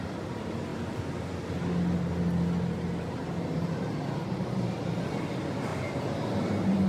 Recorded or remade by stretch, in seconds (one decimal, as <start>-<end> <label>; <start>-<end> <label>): 0.0-0.7 remade; 0.7-4.6 recorded; 4.6-6.9 remade